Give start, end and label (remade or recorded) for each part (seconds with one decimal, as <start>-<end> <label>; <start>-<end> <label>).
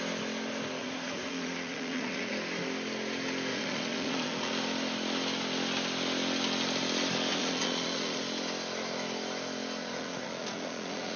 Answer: 0.0-0.8 recorded; 0.8-2.3 remade; 2.3-3.5 recorded; 3.5-4.5 remade; 4.5-7.3 recorded; 7.3-8.2 remade; 8.2-9.8 recorded; 9.8-11.2 remade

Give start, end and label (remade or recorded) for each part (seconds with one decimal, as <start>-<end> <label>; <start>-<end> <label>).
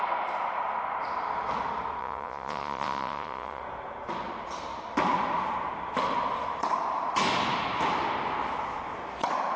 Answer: 0.0-2.0 recorded; 2.0-3.6 remade; 3.6-9.6 recorded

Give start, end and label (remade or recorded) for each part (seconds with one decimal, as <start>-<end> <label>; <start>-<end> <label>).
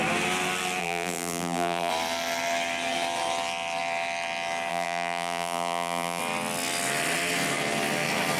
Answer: 0.0-0.8 recorded; 0.8-1.9 remade; 1.9-4.7 recorded; 4.7-6.2 remade; 6.2-8.4 recorded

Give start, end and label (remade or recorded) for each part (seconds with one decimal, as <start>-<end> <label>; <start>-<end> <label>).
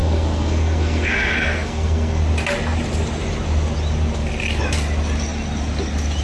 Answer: 0.0-2.2 remade; 2.2-6.2 recorded